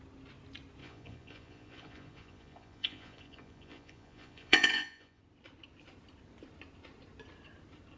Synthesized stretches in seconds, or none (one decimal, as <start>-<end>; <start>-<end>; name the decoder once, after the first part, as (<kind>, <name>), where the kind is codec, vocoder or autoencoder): 0.8-5.2 (vocoder, Vocos)